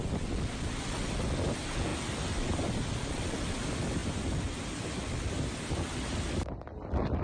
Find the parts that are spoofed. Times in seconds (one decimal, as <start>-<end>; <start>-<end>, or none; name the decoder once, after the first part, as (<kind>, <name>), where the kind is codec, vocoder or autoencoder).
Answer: none